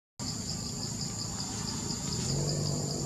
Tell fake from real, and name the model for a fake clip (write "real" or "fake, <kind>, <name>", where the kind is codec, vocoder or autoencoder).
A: real